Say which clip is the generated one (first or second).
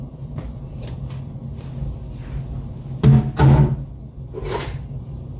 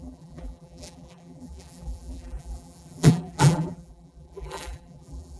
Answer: second